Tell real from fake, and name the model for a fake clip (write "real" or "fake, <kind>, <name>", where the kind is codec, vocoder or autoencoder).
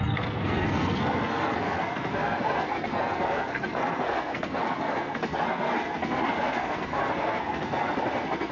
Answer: fake, codec, SNAC